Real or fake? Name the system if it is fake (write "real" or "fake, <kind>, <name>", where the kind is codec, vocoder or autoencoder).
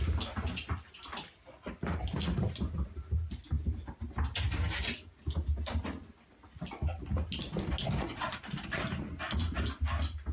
real